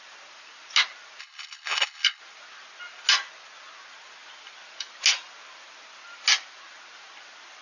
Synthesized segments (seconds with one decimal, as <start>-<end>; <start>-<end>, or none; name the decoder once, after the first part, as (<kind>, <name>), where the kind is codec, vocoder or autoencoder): 1.2-2.2 (codec, HILCodec)